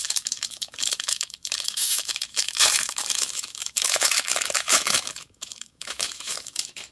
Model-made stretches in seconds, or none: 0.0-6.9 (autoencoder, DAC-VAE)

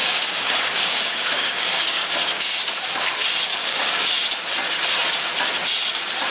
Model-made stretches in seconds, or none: 0.0-2.5 (codec, DAC); 3.5-4.1

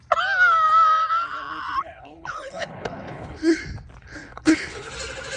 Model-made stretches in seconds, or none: 1.8-3.6 (codec, HILCodec); 4.0-4.9

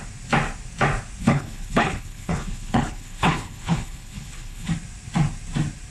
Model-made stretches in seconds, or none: 1.2-4.7 (codec, HILCodec)

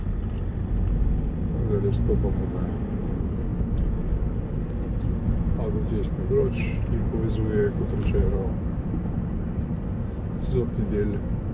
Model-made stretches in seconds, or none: 7.6-9.7 (vocoder, BigVGAN v2)

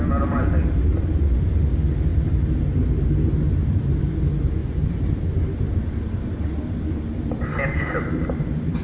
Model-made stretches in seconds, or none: none

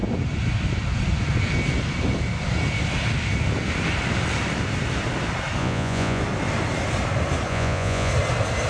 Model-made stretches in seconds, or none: 5.6-6.2 (vocoder, Vocos); 7.5-8.1

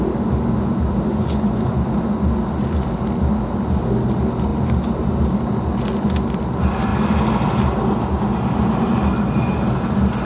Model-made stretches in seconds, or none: 1.1-1.7 (vocoder, Vocos)